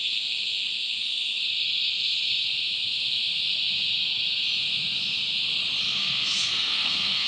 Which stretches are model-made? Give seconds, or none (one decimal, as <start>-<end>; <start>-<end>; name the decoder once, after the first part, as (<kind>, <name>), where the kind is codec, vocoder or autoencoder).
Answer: 0.0-1.4 (codec, SNAC); 5.8-7.3

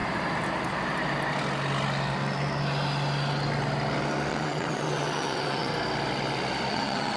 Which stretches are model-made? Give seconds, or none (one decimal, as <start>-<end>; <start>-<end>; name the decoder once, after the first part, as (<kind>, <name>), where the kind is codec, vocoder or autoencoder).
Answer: 4.3-5.7 (vocoder, WaveNeXt); 6.7-7.2